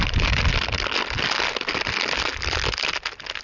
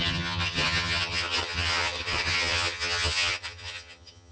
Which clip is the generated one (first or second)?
second